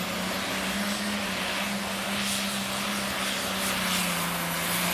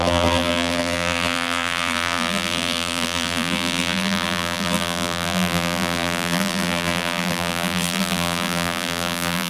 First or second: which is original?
first